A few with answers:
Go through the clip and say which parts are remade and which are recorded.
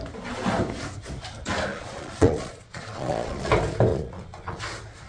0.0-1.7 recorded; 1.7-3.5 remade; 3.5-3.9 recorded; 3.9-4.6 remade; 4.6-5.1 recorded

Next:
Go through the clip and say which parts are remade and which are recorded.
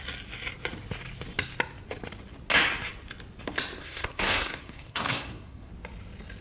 0.0-3.8 recorded; 3.8-5.7 remade; 5.7-6.4 recorded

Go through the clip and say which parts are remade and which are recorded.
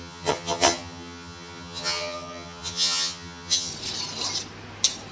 0.0-3.7 remade; 3.7-5.1 recorded